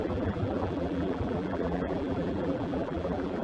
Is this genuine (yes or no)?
no